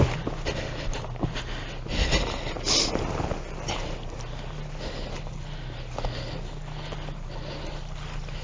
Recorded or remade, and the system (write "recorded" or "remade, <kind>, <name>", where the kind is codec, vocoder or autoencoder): recorded